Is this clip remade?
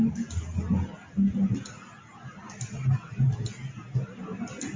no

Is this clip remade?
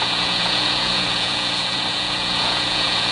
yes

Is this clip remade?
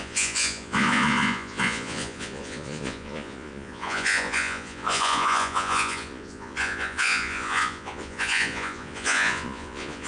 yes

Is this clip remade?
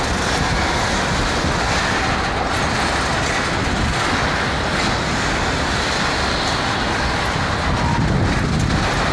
no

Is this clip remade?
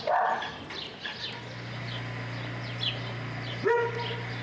no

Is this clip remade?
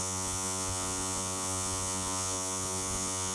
yes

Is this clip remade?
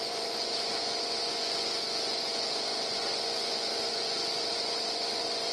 yes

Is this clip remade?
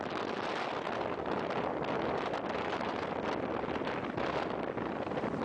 no